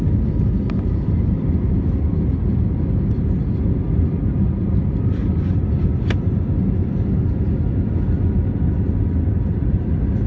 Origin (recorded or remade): recorded